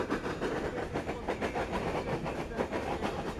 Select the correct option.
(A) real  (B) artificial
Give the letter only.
A